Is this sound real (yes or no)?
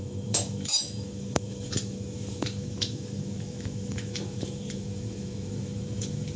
no